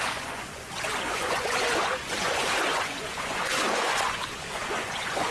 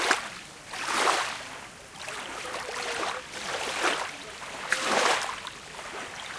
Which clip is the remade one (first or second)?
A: first